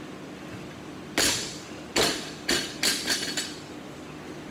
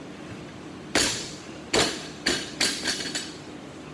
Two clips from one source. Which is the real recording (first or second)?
first